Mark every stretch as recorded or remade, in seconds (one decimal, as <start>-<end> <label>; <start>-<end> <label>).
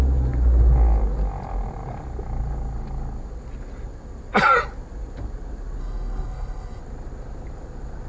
0.0-5.8 recorded; 5.8-6.8 remade; 6.8-8.1 recorded